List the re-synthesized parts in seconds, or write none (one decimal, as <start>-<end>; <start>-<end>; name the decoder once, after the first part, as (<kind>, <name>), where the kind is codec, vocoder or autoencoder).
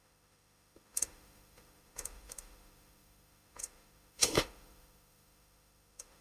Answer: 0.0-6.2 (autoencoder, DAC-VAE)